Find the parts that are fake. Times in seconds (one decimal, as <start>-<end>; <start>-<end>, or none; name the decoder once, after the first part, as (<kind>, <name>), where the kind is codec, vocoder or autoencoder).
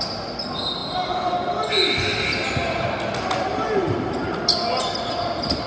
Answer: none